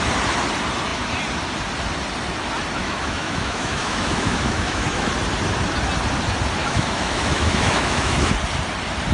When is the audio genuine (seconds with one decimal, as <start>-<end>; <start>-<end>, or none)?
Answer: 0.0-2.8; 5.1-6.6; 8.3-9.1